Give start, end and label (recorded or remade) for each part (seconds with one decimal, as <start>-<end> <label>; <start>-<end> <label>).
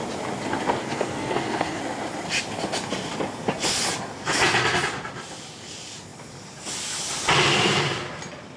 0.0-0.8 recorded; 0.8-1.8 remade; 1.8-8.6 recorded